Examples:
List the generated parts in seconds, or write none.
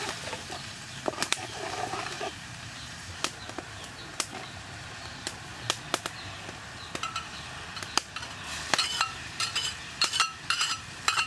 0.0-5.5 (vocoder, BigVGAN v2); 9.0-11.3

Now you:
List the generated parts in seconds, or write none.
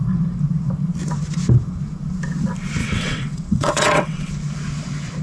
2.8-4.3 (vocoder, WaveNeXt)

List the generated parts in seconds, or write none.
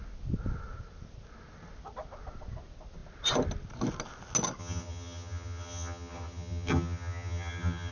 4.6-7.9 (vocoder, HiFi-GAN)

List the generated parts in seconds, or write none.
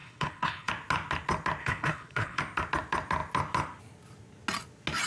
0.0-0.7 (codec, HILCodec); 1.6-2.4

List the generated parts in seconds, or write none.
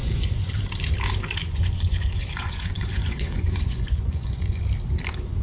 0.0-0.6 (vocoder, Vocos); 1.4-4.6